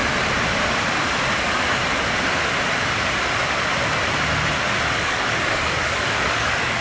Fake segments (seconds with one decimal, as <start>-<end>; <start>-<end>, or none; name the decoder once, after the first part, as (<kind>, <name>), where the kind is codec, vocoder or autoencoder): 1.4-1.8 (codec, DAC); 5.0-6.8